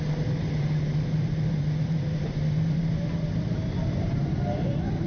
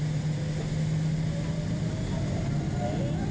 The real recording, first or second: second